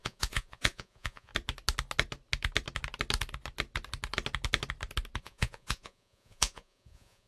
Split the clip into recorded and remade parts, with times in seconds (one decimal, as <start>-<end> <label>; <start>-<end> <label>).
0.0-1.3 remade; 1.3-5.2 recorded; 5.2-7.3 remade